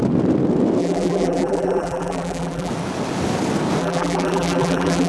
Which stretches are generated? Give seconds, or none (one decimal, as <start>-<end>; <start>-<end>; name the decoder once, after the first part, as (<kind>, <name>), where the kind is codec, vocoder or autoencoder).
0.8-2.7 (vocoder, BigVGAN v2); 3.8-5.1